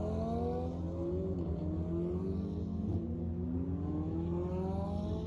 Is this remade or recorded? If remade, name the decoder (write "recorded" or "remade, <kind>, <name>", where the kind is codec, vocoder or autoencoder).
recorded